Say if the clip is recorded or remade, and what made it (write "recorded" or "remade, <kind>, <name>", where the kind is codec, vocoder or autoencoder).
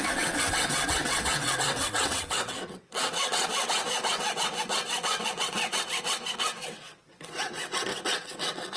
remade, vocoder, WaveNeXt